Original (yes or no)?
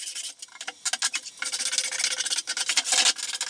yes